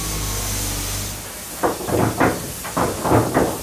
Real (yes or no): yes